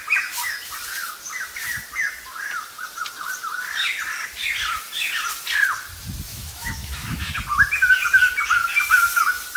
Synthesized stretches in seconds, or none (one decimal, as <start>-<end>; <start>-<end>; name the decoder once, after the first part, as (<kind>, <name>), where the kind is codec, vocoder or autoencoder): 6.3-7.3 (autoencoder, DAC-VAE)